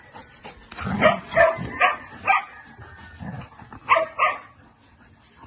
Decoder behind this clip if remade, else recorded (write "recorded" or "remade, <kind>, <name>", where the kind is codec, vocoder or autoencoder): recorded